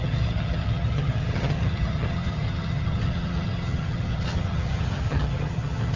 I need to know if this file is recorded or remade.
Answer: remade